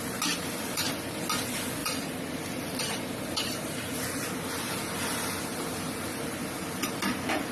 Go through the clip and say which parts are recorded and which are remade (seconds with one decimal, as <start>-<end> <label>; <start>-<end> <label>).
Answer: 0.0-7.5 recorded